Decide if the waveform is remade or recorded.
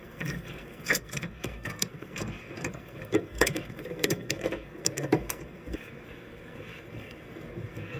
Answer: remade